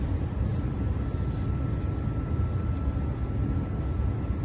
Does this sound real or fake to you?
real